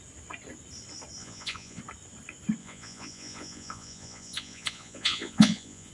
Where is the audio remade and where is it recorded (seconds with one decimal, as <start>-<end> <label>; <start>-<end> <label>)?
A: 0.0-1.2 recorded; 1.2-1.8 remade; 1.8-2.6 recorded; 2.6-5.9 remade